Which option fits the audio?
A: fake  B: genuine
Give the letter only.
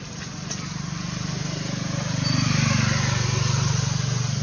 B